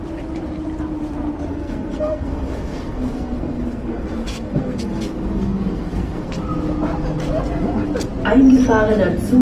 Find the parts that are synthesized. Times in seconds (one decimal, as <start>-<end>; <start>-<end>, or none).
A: 1.5-6.4